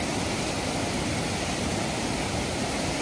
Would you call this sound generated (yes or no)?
no